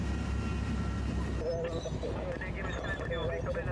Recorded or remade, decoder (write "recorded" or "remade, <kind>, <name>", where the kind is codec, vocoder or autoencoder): recorded